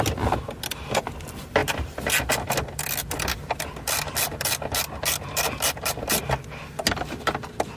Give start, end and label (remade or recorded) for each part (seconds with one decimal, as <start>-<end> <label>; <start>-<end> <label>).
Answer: 0.0-7.8 recorded